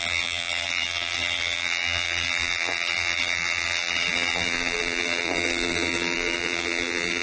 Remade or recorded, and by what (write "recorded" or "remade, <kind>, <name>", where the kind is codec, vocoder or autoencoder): remade, vocoder, BigVGAN v2